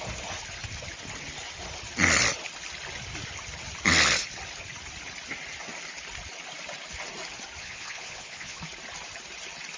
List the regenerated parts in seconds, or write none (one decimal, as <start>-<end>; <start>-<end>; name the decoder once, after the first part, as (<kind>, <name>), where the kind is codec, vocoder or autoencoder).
7.6-8.6 (vocoder, Vocos)